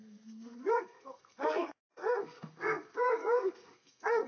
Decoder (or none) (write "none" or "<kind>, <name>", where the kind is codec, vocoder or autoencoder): codec, SNAC